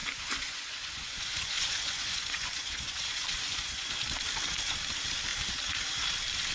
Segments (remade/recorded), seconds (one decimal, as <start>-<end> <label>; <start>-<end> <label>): 0.0-3.9 remade; 3.9-6.5 recorded